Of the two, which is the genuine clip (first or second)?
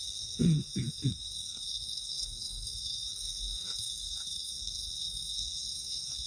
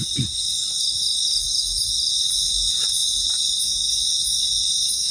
second